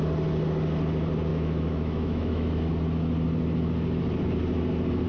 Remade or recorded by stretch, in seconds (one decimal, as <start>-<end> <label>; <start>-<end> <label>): 0.0-1.3 recorded; 1.3-2.7 remade; 2.7-5.1 recorded